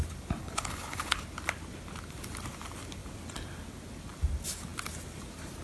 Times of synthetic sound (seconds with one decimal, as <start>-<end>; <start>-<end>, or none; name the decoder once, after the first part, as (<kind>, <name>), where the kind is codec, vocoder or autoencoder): 0.4-1.2 (codec, HILCodec)